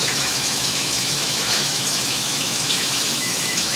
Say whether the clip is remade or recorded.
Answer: remade